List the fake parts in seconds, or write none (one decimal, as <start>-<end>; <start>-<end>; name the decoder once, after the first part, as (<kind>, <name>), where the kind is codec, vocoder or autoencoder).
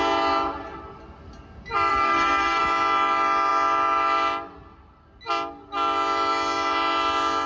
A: 1.9-2.6 (codec, SNAC)